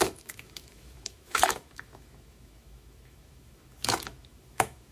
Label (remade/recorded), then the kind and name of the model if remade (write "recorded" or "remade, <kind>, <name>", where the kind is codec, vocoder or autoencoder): remade, autoencoder, DAC-VAE